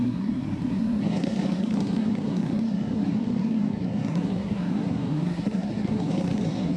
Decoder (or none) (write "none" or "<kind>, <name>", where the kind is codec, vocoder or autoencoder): codec, SNAC